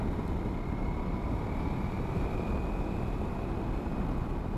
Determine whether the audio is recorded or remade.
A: recorded